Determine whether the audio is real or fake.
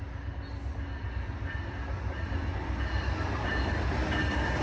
real